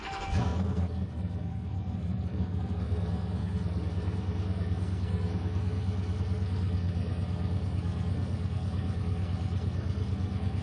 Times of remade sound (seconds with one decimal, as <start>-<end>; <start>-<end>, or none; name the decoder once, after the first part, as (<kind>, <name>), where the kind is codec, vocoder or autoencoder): 0.0-10.6 (codec, SNAC)